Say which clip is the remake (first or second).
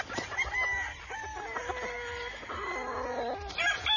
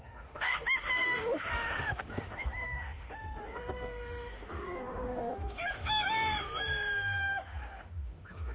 second